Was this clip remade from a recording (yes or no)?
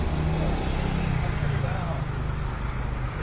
no